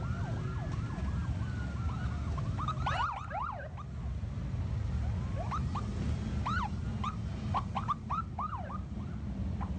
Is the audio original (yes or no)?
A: yes